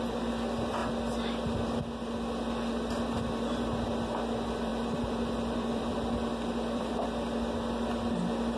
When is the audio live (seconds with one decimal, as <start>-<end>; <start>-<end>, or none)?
0.0-4.7; 6.9-8.6